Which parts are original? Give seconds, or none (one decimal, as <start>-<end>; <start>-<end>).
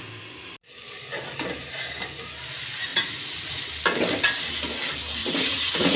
0.0-2.9; 3.6-5.2